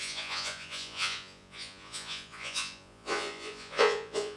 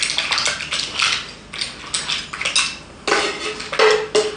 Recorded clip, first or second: second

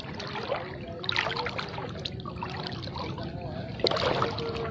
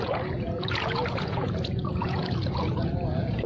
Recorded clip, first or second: first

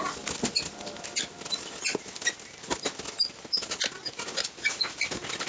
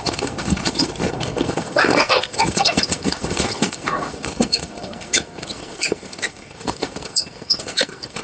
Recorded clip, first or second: first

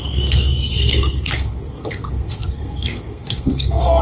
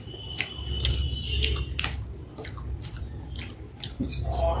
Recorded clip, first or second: second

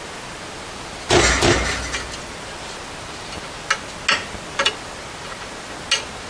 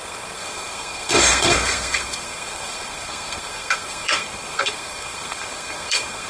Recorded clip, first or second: first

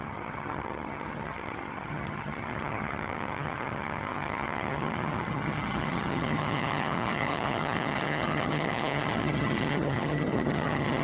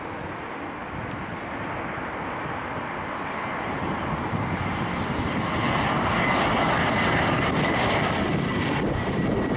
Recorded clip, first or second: second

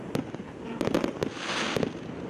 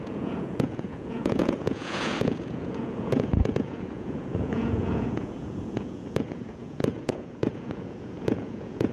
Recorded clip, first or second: first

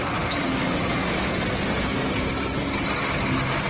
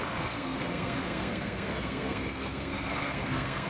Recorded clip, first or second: first